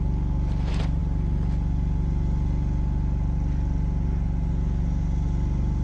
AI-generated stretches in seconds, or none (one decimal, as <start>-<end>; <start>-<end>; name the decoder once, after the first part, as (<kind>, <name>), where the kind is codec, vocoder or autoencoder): none